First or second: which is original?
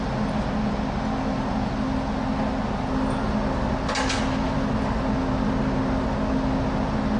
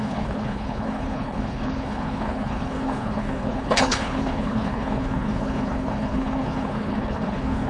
first